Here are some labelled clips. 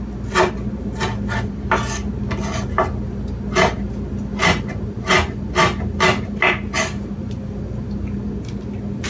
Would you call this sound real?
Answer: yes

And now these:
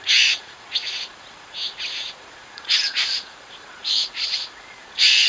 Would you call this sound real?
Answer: no